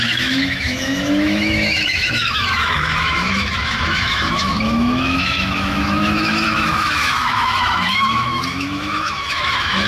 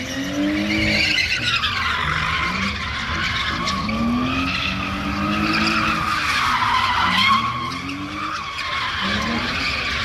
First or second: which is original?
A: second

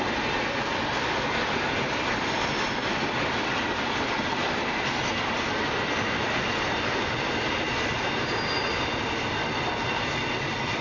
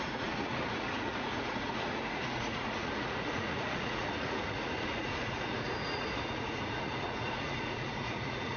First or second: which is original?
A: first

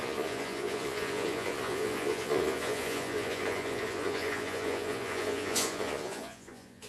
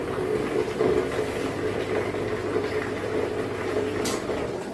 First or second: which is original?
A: second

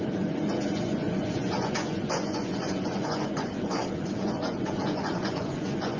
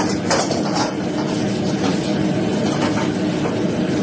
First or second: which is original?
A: second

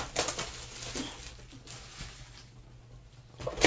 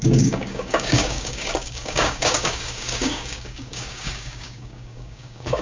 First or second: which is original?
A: first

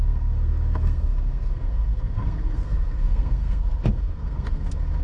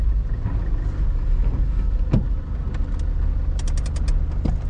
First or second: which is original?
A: second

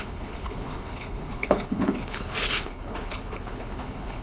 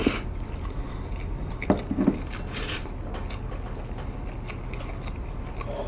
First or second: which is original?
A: second